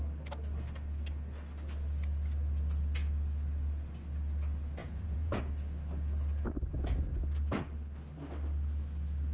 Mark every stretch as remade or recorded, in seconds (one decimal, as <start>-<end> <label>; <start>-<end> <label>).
0.0-4.8 recorded; 4.8-5.4 remade; 5.4-9.3 recorded